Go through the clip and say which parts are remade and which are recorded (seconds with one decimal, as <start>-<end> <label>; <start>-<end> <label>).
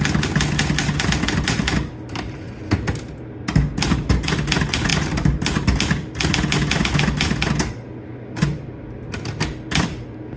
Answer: 0.0-10.4 recorded